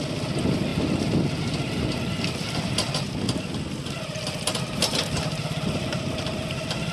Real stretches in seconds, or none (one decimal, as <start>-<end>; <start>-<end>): 0.0-6.9